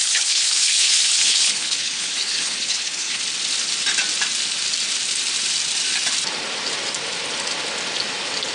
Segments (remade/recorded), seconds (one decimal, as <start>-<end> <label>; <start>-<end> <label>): 0.0-3.2 remade; 3.2-8.5 recorded